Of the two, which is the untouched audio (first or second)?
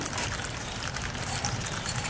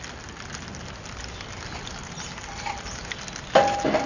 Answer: second